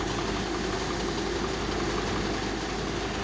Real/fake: real